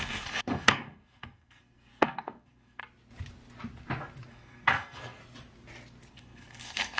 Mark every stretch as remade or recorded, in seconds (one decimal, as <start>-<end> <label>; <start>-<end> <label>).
0.0-2.8 remade; 2.8-4.3 recorded; 4.3-5.2 remade; 5.2-6.1 recorded; 6.1-7.0 remade